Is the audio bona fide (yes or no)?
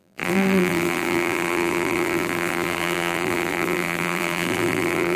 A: no